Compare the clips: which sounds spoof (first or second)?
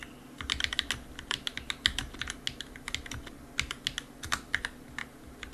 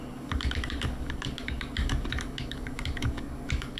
second